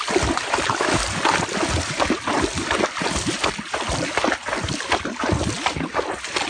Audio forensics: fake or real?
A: real